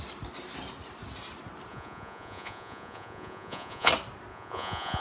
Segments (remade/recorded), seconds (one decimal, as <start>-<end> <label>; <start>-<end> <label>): 0.0-1.7 recorded; 1.7-3.9 remade; 3.9-4.3 recorded; 4.3-5.0 remade